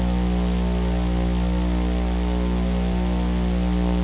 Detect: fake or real real